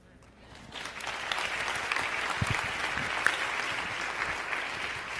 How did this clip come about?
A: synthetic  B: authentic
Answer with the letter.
B